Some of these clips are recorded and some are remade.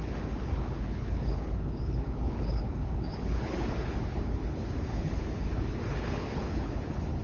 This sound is remade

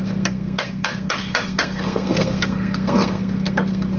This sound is remade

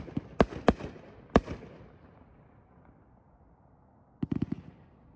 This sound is recorded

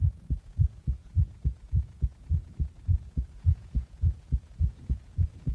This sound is remade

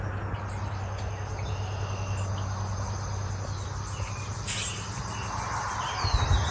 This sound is recorded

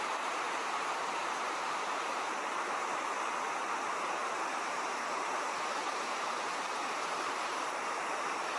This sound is remade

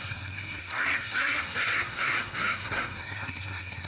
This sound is remade